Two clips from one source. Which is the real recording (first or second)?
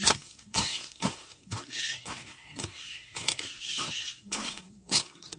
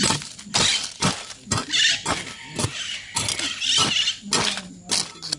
second